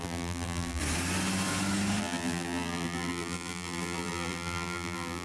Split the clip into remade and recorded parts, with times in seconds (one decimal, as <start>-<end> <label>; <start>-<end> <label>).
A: 0.0-0.8 remade; 0.8-2.0 recorded; 2.0-5.2 remade